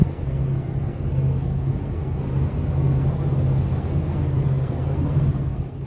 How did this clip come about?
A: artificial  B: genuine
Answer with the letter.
A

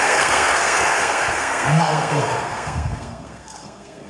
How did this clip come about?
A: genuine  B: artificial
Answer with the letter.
B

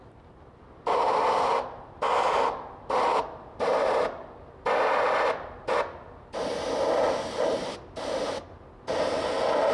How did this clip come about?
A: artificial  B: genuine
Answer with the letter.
B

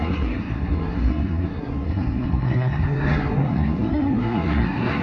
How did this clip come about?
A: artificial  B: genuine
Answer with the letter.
A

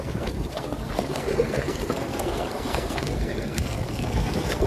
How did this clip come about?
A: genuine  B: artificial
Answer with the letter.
B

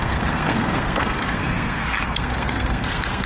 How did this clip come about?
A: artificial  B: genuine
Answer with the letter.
A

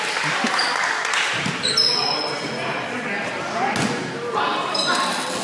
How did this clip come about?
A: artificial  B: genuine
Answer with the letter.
B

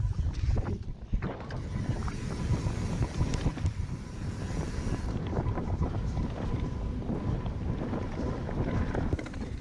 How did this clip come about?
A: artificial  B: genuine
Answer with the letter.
B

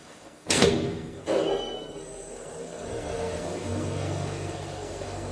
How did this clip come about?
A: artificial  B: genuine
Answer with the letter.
A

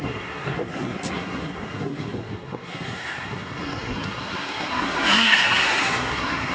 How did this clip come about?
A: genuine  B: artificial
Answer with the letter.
B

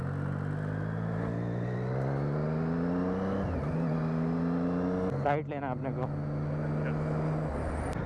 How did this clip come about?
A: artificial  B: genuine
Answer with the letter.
B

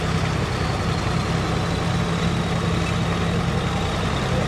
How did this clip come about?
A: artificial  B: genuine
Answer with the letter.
B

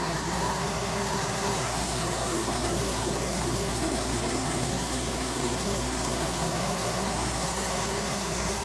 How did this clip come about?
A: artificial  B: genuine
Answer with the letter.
A